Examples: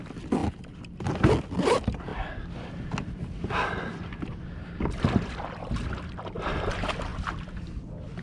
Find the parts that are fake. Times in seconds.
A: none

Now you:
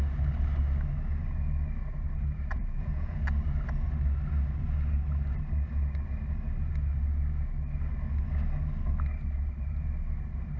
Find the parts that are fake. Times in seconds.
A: 2.6-3.2 (vocoder, Vocos)

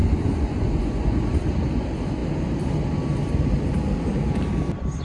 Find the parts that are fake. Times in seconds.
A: 0.0-1.2 (vocoder, Vocos)

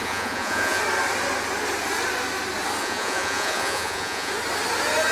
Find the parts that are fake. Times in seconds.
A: 0.0-0.8 (vocoder, Vocos); 2.8-4.3

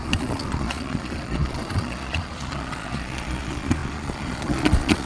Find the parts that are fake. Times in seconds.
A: 0.0-5.1 (vocoder, Vocos)

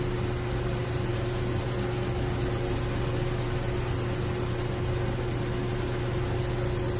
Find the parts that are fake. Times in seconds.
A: none

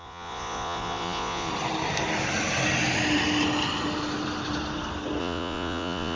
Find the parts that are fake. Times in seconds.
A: 0.0-1.5 (vocoder, Vocos); 5.2-6.2

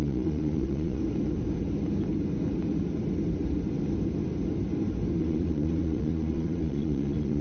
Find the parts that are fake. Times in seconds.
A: 0.0-1.0 (vocoder, Vocos); 5.2-7.4